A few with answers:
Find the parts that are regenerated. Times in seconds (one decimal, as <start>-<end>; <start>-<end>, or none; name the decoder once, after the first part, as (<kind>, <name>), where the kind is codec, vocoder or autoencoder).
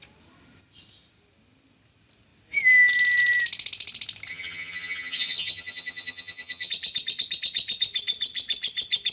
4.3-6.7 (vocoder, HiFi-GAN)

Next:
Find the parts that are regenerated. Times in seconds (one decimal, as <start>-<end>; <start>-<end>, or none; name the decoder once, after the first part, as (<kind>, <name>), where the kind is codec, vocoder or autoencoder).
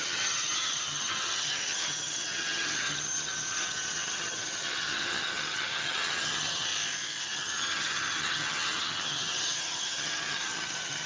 0.0-6.7 (vocoder, HiFi-GAN); 7.2-11.1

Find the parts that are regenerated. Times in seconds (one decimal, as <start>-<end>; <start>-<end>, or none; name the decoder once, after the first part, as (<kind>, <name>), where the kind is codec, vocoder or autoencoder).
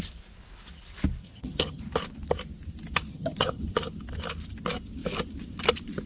1.2-1.8 (vocoder, HiFi-GAN); 3.1-3.6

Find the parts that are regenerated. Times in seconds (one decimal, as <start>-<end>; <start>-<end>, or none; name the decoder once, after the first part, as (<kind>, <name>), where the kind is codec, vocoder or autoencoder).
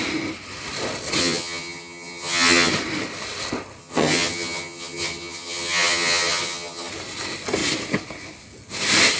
1.2-2.7 (vocoder, HiFi-GAN); 3.8-6.9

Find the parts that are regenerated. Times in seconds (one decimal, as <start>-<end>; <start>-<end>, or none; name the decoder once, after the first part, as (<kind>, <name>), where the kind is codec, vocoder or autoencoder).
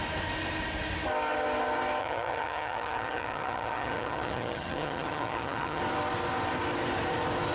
2.0-5.8 (vocoder, HiFi-GAN)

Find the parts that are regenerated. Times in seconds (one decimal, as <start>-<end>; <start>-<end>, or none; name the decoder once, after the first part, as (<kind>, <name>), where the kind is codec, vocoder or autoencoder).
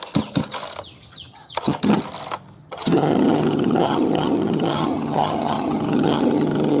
1.1-2.0 (vocoder, HiFi-GAN); 2.6-6.8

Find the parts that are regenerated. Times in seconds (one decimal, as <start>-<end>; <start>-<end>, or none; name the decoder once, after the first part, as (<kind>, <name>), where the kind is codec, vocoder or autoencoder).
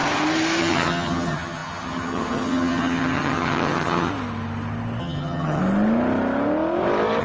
0.6-4.1 (vocoder, HiFi-GAN); 5.0-5.6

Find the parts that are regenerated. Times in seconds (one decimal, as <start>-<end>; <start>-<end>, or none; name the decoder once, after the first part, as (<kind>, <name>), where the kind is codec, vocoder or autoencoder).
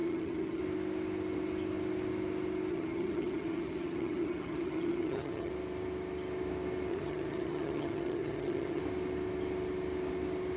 0.0-0.6 (vocoder, HiFi-GAN); 2.7-5.5; 6.9-8.8